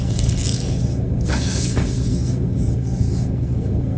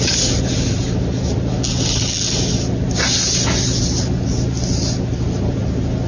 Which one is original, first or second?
second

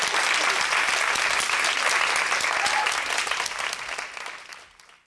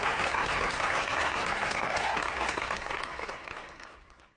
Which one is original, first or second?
first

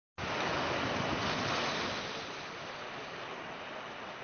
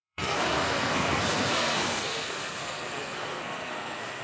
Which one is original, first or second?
first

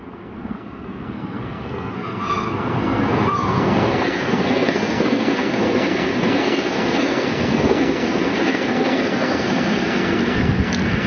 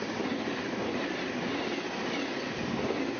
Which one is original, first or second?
second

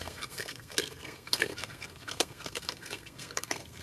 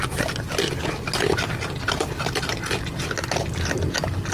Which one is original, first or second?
second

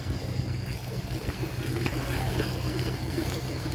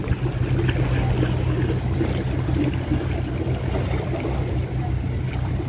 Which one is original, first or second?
second